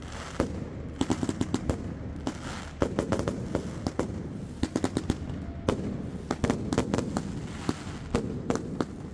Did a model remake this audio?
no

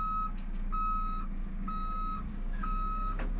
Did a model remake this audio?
yes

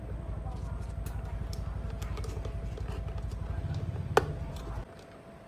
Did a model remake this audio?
no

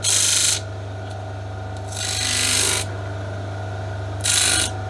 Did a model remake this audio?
no